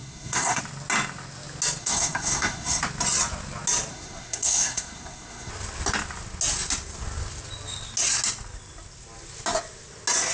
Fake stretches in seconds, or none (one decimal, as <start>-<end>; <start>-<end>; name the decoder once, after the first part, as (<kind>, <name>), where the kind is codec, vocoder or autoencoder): 0.0-0.6 (codec, SNAC); 1.8-2.8; 3.9-5.5